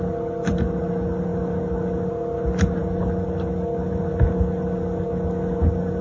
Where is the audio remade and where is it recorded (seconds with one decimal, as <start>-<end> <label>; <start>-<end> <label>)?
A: 0.0-6.0 recorded